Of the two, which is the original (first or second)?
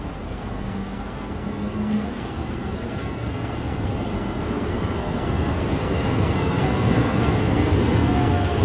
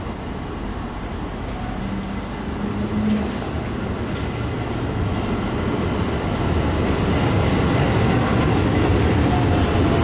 second